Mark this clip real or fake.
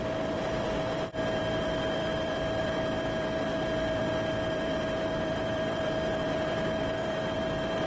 fake